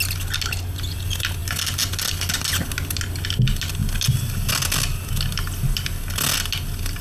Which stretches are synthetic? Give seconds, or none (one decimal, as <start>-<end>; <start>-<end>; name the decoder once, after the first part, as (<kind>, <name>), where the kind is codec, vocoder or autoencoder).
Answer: none